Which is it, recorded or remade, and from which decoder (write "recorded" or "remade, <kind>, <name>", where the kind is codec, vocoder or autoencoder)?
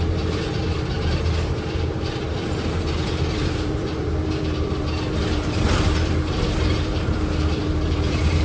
remade, vocoder, BigVGAN v2